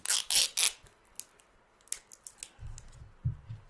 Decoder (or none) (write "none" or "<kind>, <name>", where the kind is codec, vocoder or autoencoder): none